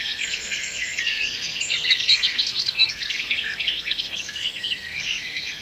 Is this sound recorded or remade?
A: remade